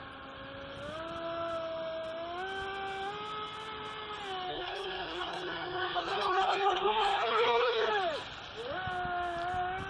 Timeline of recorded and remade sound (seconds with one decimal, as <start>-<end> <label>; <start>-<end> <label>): 0.0-4.5 recorded; 4.5-7.9 remade; 7.9-9.9 recorded